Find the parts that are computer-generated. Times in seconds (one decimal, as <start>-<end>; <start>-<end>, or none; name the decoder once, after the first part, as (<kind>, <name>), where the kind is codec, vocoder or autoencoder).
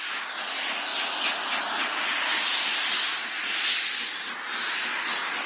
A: none